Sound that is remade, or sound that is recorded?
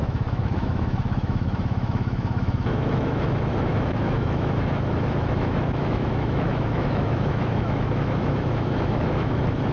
remade